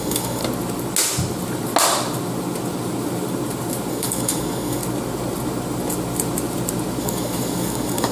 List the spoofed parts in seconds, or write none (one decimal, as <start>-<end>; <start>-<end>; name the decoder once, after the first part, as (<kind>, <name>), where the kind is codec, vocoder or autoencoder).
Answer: 0.0-0.4 (codec, DAC); 3.9-4.8; 7.0-8.1

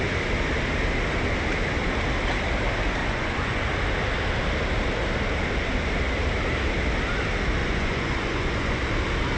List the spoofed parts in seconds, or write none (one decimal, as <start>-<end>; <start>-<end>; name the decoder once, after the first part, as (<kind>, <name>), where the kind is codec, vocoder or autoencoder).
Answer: 3.0-3.6 (vocoder, Vocos); 7.6-8.8

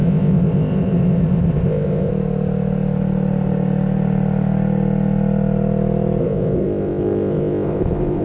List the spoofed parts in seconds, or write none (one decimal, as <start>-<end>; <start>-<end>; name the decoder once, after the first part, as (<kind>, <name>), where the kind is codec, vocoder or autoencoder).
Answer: 0.0-2.1 (codec, ZipCodec); 6.2-8.2

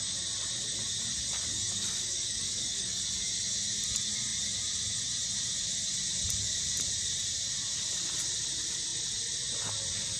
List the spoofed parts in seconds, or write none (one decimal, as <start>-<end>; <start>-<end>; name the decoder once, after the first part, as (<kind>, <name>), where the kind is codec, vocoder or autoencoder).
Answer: 1.5-3.0 (codec, DAC)